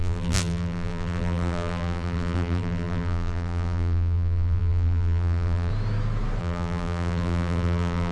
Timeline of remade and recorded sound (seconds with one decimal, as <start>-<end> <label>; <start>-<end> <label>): 0.0-5.7 remade; 5.7-6.4 recorded; 6.4-8.1 remade